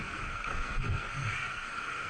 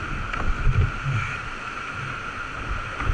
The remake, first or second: first